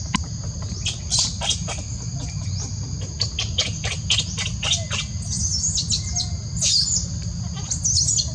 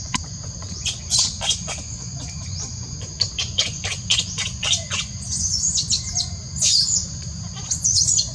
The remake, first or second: second